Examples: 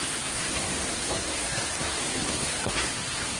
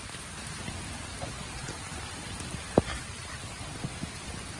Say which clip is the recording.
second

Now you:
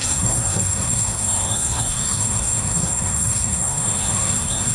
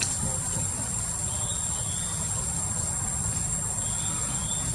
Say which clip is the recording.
second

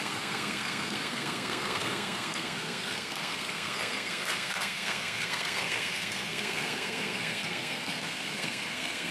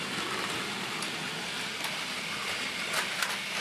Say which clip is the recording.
second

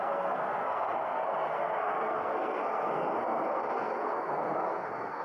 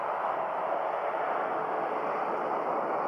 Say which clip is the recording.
second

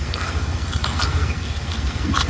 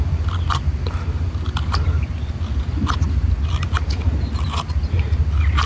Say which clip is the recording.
second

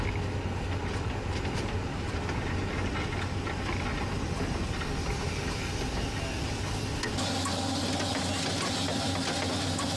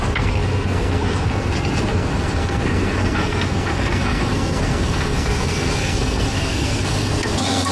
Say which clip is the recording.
first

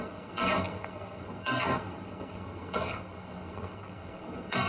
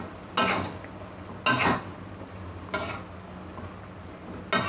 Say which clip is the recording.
second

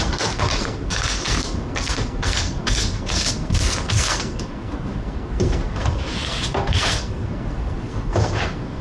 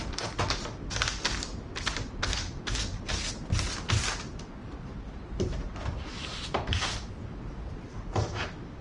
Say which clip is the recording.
second